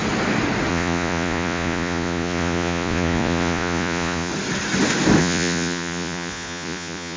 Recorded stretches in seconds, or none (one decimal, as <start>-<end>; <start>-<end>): 0.0-0.7; 4.3-5.2